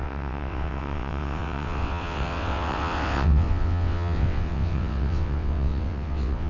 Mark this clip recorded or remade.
remade